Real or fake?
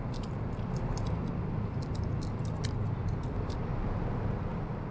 real